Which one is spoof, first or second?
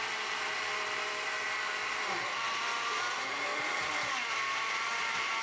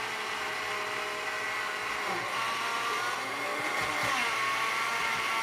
first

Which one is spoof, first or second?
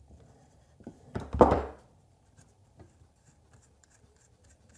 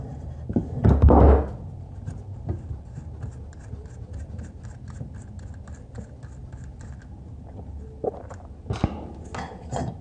first